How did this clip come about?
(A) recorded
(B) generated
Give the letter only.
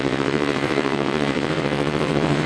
B